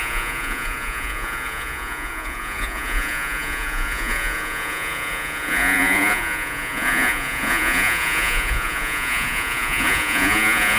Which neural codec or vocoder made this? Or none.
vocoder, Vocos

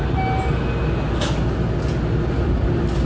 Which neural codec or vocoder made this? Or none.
none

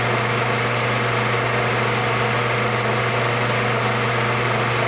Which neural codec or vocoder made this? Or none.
none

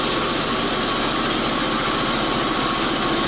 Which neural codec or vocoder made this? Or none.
none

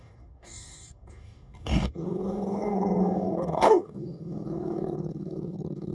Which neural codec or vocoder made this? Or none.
codec, DAC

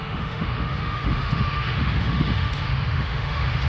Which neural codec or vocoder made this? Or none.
autoencoder, DAC-VAE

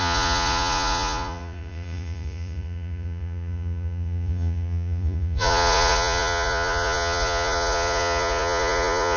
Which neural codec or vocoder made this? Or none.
vocoder, Vocos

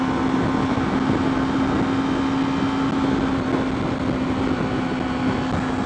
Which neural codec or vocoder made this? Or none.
none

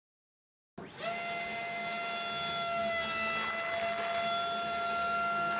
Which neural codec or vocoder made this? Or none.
none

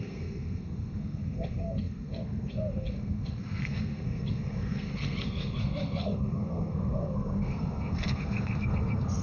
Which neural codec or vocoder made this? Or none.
codec, SNAC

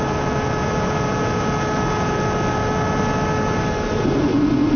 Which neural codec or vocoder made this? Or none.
none